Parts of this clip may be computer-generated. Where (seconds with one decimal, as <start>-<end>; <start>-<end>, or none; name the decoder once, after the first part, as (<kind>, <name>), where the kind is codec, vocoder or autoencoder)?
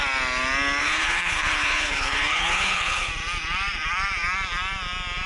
0.8-3.1 (codec, HILCodec)